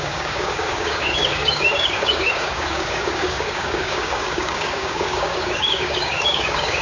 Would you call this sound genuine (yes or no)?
no